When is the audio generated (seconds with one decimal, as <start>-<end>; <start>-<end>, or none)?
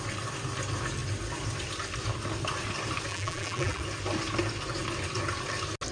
3.1-3.8